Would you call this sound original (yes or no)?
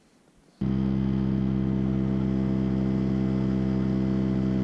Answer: yes